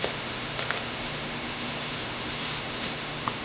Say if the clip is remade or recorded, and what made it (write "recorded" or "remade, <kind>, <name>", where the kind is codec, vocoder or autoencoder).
remade, autoencoder, DAC-VAE